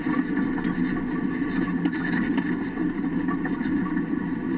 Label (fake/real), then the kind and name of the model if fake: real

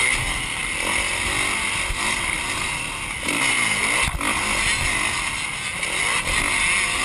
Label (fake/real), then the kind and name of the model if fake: real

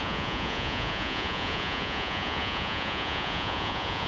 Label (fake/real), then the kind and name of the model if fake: fake, vocoder, Vocos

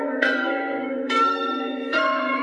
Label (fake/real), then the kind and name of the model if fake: fake, codec, SNAC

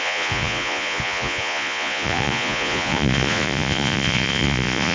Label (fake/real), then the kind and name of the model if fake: fake, vocoder, Vocos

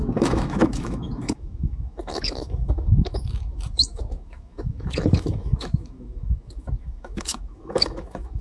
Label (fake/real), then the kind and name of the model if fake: fake, autoencoder, DAC-VAE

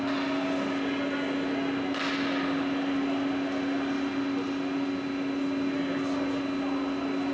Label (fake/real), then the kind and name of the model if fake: real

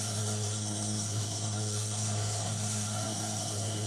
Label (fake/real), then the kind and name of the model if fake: fake, codec, SNAC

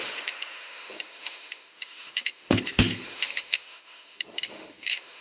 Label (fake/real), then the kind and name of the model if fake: fake, autoencoder, DAC-VAE